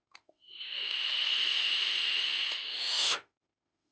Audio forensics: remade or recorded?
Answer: remade